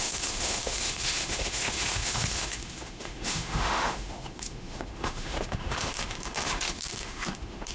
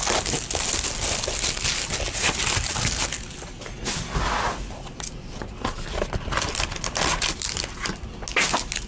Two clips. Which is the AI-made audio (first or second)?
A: first